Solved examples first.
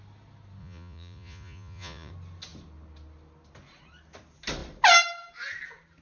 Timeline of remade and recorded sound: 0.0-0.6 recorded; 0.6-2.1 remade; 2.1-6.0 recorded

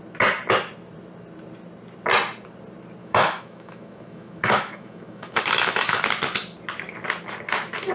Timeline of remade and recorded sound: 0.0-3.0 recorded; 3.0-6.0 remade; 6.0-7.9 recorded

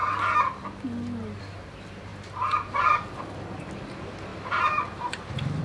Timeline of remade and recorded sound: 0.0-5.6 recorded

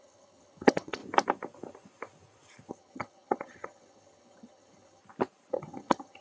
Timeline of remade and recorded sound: 0.0-1.0 remade; 1.0-2.7 recorded; 2.7-5.0 remade; 5.0-5.5 recorded; 5.5-6.2 remade

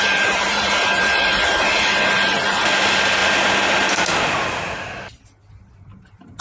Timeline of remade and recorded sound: 0.0-6.4 recorded